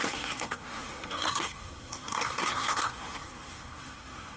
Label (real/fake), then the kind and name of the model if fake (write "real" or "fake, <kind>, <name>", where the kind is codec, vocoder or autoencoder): fake, codec, SNAC